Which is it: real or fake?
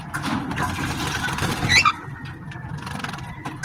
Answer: real